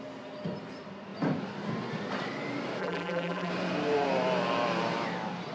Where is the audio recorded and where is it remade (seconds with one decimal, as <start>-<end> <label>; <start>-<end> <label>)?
0.0-2.8 recorded; 2.8-3.5 remade; 3.5-5.5 recorded